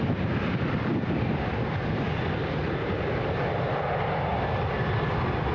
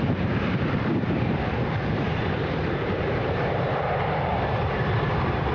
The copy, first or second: second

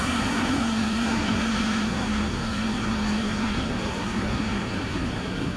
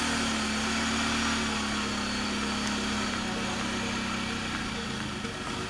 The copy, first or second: first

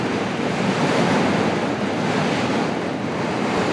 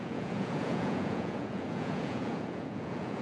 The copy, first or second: second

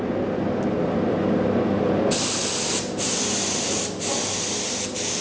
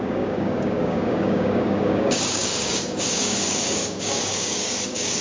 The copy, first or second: second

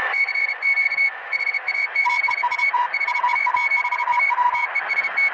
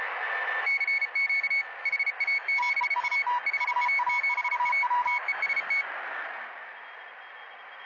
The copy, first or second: first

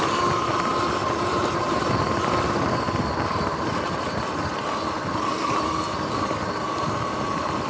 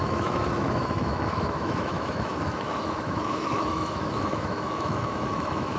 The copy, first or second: second